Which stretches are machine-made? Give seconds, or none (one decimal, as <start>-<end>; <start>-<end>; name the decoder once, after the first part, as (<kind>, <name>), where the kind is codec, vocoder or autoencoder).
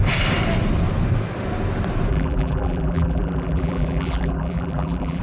2.1-5.2 (vocoder, BigVGAN v2)